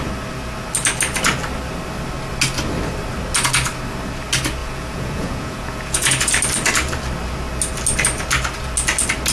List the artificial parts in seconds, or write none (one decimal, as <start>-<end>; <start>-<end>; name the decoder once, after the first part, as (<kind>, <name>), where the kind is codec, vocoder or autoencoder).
4.6-6.3 (vocoder, Vocos)